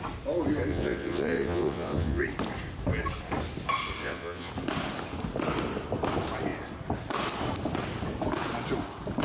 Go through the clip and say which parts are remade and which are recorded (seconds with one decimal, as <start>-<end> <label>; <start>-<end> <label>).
0.0-0.7 recorded; 0.7-2.2 remade; 2.2-4.0 recorded; 4.0-4.5 remade; 4.5-9.2 recorded